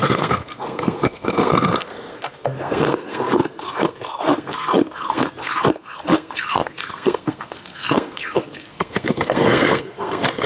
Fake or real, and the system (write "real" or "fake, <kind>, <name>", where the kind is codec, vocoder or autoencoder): fake, codec, SNAC